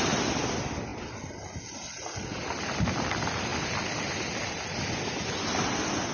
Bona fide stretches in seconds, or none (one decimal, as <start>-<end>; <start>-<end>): 0.0-6.1